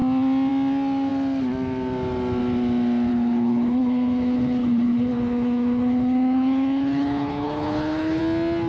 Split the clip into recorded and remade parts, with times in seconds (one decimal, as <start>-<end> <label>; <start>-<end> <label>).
0.0-3.1 recorded; 3.1-8.2 remade; 8.2-8.7 recorded